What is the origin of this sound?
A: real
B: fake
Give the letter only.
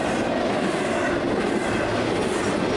A